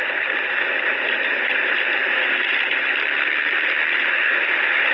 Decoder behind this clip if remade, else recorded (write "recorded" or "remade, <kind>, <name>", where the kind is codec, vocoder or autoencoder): recorded